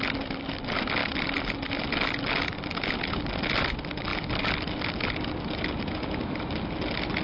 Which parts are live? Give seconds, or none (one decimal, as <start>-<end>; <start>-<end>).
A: 0.0-7.2